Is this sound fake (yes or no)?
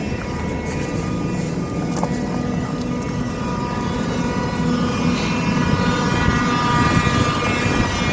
no